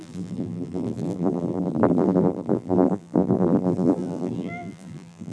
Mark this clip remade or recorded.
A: remade